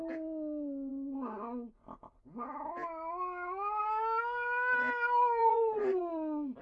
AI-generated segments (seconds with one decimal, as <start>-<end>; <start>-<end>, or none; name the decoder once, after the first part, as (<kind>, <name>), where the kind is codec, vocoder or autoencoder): 5.4-6.0 (vocoder, Vocos)

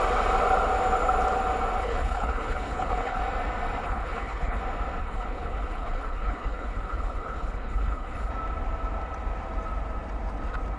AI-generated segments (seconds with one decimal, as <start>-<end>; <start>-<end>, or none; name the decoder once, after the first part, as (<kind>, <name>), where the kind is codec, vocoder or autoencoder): 1.8-3.2 (codec, HILCodec); 3.8-4.6; 5.0-8.3

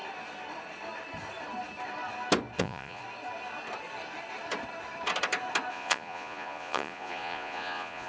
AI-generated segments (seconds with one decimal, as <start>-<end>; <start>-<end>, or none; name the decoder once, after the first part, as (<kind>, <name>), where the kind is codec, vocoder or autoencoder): 2.6-3.0 (vocoder, Vocos); 5.7-8.1

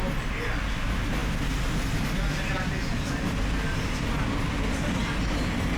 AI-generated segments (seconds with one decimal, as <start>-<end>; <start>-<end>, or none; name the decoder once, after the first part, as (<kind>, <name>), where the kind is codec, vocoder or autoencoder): none